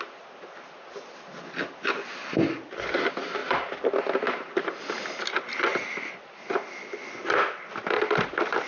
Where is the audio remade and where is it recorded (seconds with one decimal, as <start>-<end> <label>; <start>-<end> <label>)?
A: 0.0-2.1 recorded; 2.1-2.7 remade; 2.7-3.4 recorded; 3.4-4.3 remade; 4.3-8.7 recorded